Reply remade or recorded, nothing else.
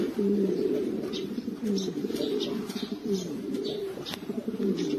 remade